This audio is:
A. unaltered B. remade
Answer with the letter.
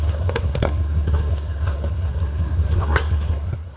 B